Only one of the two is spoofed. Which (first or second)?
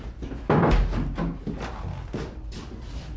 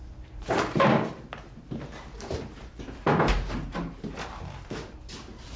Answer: second